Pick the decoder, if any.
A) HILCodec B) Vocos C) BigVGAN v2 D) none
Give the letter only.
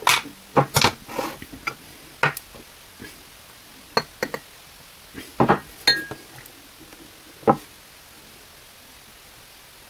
D